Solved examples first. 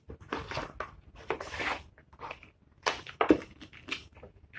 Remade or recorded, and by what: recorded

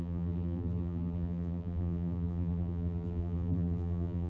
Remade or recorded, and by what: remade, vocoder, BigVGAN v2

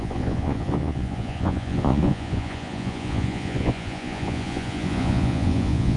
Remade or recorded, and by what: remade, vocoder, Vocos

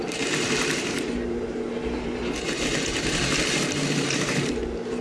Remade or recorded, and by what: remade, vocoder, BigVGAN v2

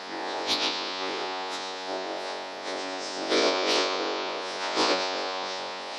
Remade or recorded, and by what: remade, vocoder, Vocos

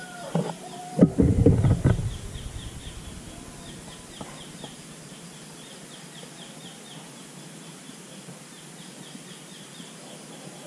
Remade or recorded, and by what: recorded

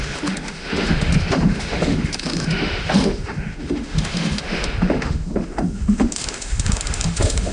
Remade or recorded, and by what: remade, autoencoder, DAC-VAE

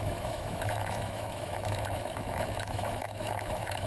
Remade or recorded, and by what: remade, autoencoder, DAC-VAE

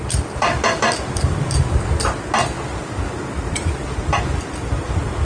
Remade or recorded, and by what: recorded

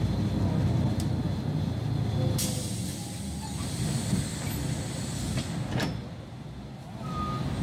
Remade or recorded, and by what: recorded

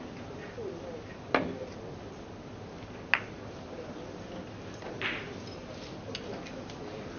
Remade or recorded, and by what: recorded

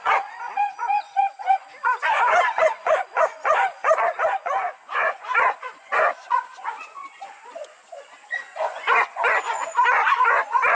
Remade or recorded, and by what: remade, vocoder, Vocos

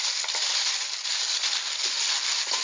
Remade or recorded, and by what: recorded